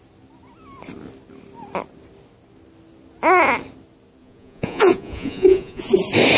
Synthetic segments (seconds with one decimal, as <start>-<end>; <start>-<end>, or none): 4.2-5.9